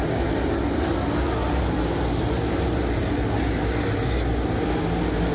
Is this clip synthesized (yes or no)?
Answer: no